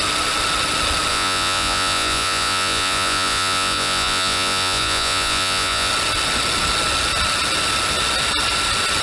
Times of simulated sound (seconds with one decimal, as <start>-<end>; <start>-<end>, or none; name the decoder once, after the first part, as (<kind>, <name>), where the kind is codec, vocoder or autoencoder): 1.1-5.9 (vocoder, Vocos)